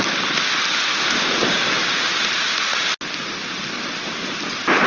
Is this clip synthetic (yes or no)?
no